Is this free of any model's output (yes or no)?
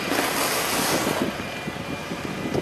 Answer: yes